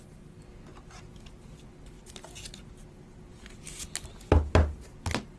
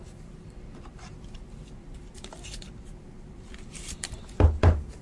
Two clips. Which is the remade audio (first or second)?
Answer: second